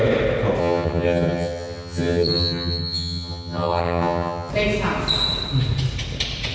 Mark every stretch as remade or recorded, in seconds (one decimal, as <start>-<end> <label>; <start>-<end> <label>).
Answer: 0.0-0.6 recorded; 0.6-4.5 remade; 4.5-6.5 recorded